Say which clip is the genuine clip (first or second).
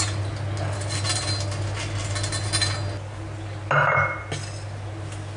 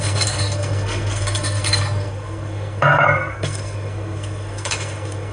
first